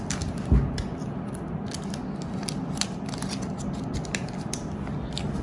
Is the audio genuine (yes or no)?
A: yes